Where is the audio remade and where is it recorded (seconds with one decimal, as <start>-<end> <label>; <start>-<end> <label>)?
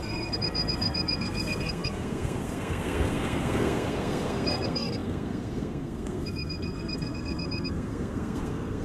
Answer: 0.0-8.8 remade